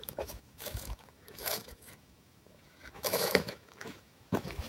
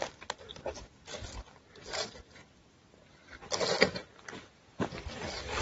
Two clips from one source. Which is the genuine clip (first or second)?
second